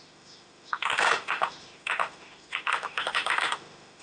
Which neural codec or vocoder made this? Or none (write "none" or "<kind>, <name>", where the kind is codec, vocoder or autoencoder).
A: autoencoder, DAC-VAE